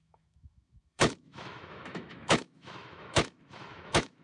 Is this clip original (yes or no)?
no